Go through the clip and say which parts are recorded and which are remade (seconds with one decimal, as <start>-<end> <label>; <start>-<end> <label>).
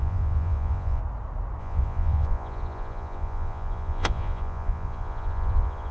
0.0-1.0 remade; 1.0-1.6 recorded; 1.6-5.9 remade